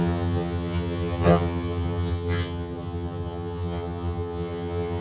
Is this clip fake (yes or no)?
yes